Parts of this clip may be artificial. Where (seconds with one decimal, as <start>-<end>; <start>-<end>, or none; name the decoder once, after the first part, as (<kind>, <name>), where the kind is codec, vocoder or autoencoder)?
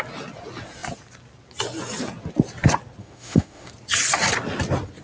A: 3.0-3.7 (autoencoder, DAC-VAE)